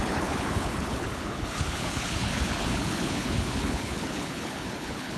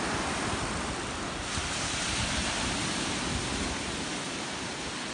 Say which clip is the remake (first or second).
first